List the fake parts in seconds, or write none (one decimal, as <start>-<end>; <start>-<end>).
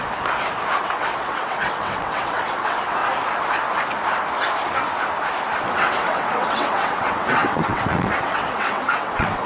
0.8-3.0; 5.7-9.5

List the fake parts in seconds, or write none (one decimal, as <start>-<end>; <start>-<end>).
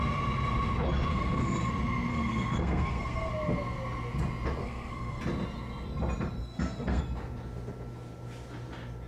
1.1-1.7; 2.1-3.3; 4.6-5.2; 6.4-7.0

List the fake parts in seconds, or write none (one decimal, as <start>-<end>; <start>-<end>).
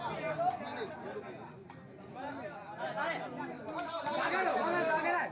4.5-5.3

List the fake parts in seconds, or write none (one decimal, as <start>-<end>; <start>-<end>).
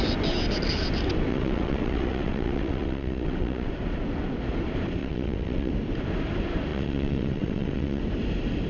1.3-3.7; 5.0-5.7; 6.7-8.0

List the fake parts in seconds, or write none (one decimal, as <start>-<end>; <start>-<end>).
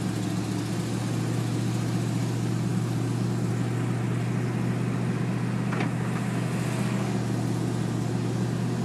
none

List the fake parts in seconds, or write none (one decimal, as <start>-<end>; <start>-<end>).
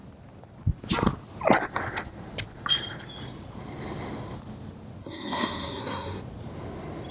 5.0-6.2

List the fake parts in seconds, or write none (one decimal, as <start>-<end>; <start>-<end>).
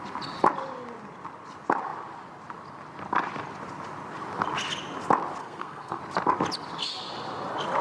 5.4-6.0